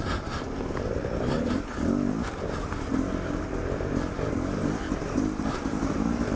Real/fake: real